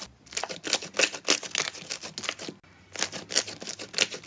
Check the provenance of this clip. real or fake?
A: real